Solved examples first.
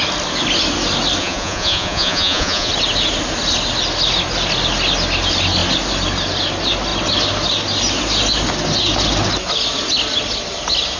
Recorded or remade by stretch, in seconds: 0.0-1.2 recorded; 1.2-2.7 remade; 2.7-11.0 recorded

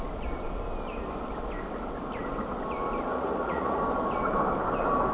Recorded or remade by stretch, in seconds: 0.0-3.1 recorded; 3.1-3.8 remade; 3.8-5.1 recorded